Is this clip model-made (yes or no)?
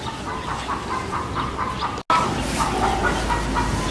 no